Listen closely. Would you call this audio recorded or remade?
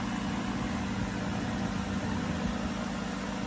recorded